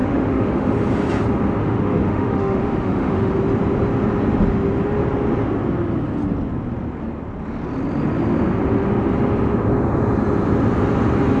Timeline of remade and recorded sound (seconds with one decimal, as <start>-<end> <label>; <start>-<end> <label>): 0.0-0.7 remade; 0.7-1.6 recorded; 1.6-3.3 remade; 3.3-11.4 recorded